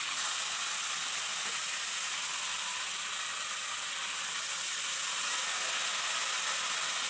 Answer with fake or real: real